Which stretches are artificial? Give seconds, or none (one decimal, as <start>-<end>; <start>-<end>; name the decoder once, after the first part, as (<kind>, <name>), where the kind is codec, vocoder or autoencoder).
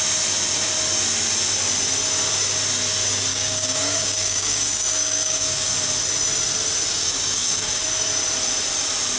3.3-5.7 (codec, DAC); 6.9-7.8